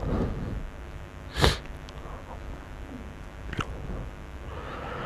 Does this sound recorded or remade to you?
recorded